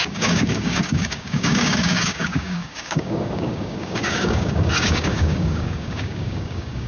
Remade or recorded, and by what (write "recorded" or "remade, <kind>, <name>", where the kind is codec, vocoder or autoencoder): remade, codec, DAC